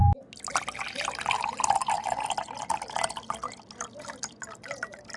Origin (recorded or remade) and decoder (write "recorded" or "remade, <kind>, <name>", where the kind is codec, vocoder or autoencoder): recorded